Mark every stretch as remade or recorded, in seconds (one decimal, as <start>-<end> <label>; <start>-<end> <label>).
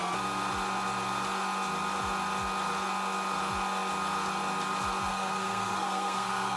0.0-5.1 recorded; 5.1-6.6 remade